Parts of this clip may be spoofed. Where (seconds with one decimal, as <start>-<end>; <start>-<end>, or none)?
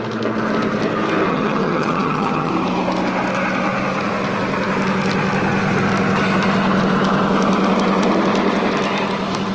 1.3-2.5